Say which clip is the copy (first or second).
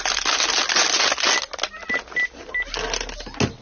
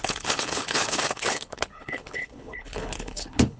second